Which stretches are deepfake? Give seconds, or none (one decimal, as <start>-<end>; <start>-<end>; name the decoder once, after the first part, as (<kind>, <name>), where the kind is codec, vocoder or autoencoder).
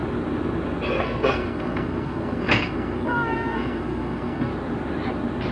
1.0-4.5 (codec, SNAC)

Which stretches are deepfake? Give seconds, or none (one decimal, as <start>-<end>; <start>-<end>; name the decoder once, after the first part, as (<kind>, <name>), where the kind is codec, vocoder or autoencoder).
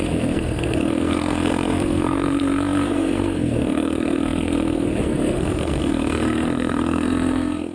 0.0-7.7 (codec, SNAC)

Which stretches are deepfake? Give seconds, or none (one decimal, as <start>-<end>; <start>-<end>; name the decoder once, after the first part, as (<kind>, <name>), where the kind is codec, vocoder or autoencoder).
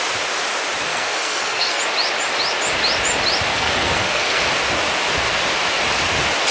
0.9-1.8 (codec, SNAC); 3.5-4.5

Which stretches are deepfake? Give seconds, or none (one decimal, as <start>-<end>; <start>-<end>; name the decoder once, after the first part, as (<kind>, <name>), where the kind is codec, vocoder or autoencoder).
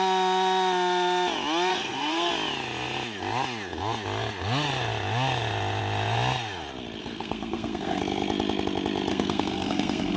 1.7-2.3 (codec, SNAC); 7.0-8.0; 9.1-10.2